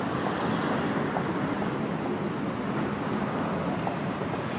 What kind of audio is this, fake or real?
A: real